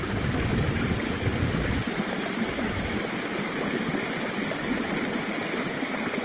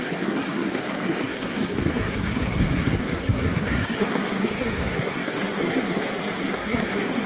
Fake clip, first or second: second